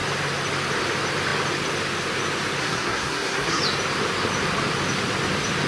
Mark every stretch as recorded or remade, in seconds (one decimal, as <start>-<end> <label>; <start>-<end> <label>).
0.0-2.6 recorded; 2.6-3.6 remade; 3.6-5.7 recorded